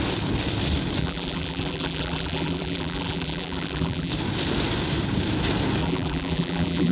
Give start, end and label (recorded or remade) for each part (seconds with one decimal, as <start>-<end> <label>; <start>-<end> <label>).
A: 0.0-1.0 recorded; 1.0-4.1 remade; 4.1-5.8 recorded; 5.8-6.9 remade